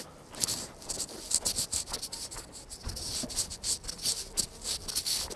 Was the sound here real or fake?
real